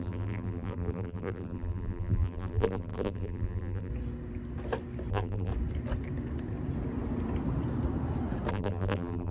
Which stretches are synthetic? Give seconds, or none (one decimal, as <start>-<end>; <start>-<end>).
0.0-3.9; 5.1-5.5; 8.5-9.3